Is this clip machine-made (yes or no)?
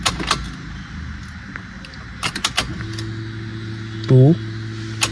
no